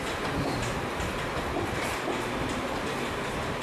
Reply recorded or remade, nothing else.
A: recorded